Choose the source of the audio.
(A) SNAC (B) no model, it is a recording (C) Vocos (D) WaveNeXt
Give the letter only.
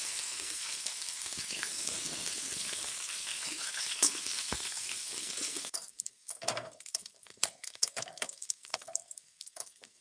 A